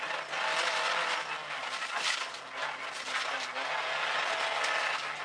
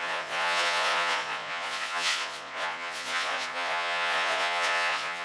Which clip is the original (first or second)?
first